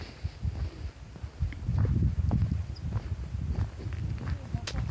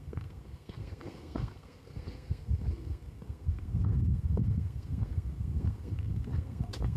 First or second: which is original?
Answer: first